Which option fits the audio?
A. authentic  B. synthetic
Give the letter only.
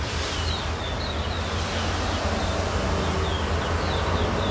A